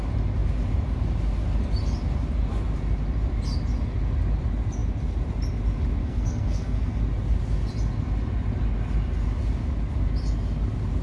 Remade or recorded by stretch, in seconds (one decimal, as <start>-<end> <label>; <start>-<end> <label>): 0.0-6.0 recorded; 6.0-7.0 remade; 7.0-11.0 recorded